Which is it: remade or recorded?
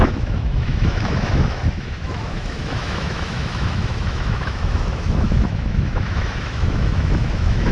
remade